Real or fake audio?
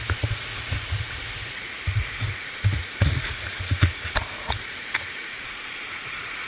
fake